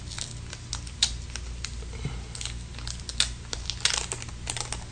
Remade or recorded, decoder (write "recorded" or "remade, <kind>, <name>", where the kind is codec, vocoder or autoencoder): recorded